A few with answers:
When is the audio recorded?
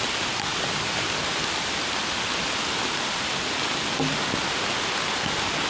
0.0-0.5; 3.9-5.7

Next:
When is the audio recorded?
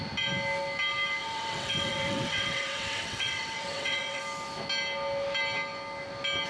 0.0-1.2; 4.2-6.5